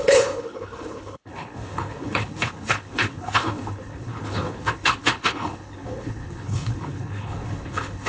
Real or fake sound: fake